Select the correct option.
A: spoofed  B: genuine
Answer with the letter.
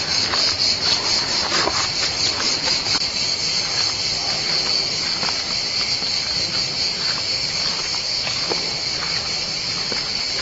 A